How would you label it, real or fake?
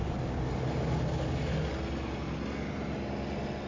real